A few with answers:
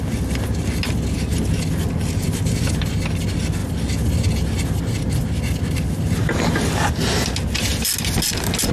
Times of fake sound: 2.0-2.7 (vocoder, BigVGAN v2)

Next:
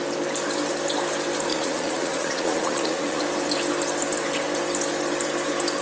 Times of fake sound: 1.5-3.2 (vocoder, Vocos)

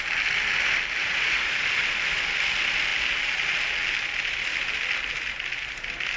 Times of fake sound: 1.0-1.6 (vocoder, Vocos)

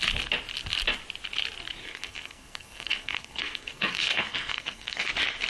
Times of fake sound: 1.8-5.1 (codec, SNAC)